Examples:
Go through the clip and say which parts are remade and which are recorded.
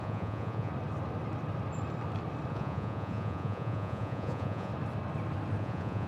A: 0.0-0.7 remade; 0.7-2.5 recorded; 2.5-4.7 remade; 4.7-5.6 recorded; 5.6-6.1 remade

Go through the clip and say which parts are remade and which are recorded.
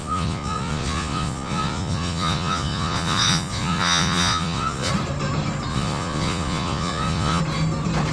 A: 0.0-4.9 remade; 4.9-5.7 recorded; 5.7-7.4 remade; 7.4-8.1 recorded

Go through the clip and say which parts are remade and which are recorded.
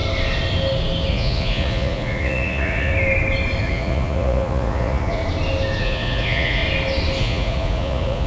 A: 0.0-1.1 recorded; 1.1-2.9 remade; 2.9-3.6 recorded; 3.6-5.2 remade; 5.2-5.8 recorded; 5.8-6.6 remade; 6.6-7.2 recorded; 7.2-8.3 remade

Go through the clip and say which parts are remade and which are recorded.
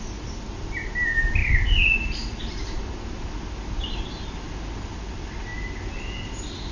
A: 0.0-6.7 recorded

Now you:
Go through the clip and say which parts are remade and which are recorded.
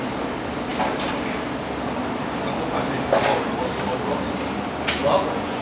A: 0.0-5.0 recorded; 5.0-5.6 remade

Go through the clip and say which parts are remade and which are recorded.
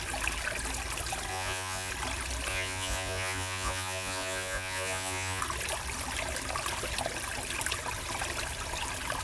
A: 0.0-1.3 recorded; 1.3-1.9 remade; 1.9-2.5 recorded; 2.5-5.4 remade; 5.4-9.2 recorded